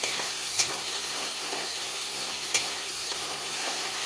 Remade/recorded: remade